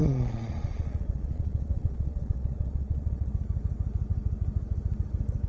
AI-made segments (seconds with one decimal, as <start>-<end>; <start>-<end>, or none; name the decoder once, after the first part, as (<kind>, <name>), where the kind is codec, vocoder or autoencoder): 0.0-3.3 (vocoder, Vocos)